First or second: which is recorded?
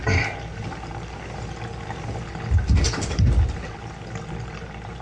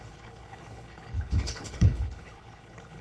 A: first